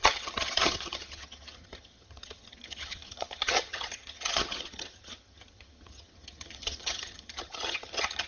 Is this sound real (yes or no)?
no